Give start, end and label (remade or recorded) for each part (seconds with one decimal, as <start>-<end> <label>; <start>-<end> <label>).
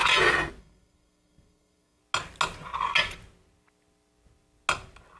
0.0-0.6 recorded; 0.6-2.0 remade; 2.0-5.2 recorded